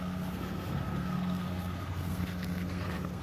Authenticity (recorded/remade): remade